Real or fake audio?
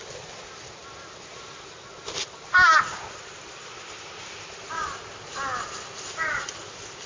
real